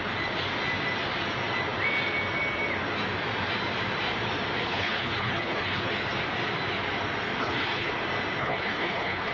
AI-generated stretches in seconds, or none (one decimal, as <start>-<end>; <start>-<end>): 4.6-5.9; 7.4-7.9; 8.4-9.3